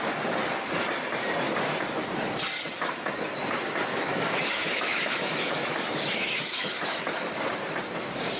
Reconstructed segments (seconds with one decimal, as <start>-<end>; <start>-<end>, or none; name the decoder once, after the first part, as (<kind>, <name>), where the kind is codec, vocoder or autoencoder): 3.9-7.4 (autoencoder, DAC-VAE)